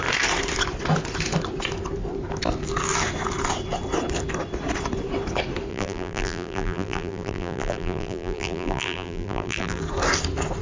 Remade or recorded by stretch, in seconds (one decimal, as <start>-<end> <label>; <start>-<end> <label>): 0.0-5.7 recorded; 5.7-9.8 remade; 9.8-10.6 recorded